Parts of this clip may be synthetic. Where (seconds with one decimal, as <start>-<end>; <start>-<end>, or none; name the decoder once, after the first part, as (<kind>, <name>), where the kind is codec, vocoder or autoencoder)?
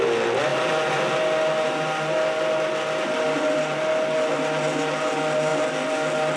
none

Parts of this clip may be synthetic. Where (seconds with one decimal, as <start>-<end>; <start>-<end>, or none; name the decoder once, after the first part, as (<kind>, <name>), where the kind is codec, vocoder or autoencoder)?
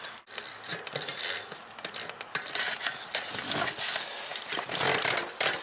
4.3-5.6 (vocoder, BigVGAN v2)